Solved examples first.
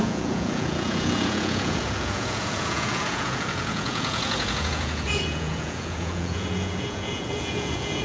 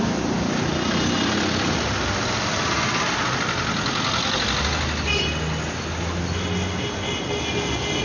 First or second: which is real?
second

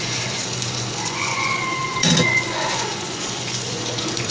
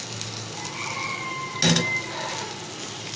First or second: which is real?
second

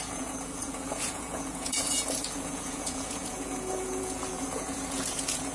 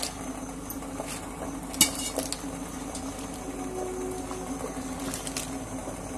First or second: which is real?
second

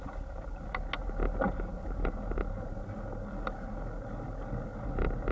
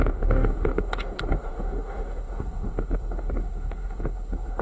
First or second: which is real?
first